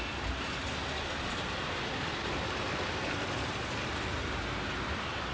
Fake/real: real